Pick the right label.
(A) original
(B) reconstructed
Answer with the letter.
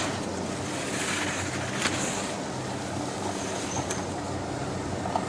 A